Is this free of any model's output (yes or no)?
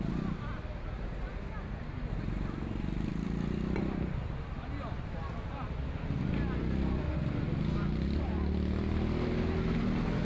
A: yes